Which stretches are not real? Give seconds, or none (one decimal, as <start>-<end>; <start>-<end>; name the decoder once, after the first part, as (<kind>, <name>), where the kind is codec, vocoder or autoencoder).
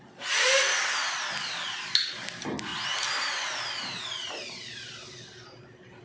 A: none